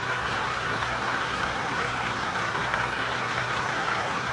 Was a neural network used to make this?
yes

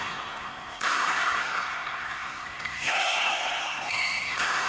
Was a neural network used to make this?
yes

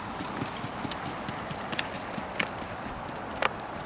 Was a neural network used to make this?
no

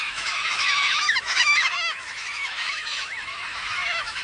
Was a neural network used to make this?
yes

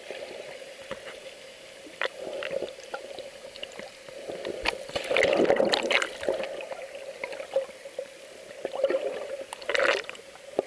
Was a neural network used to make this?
no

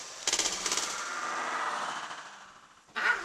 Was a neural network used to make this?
no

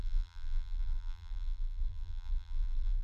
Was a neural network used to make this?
yes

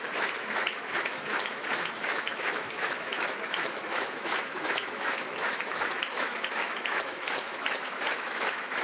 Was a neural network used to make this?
yes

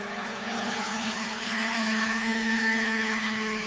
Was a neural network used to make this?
yes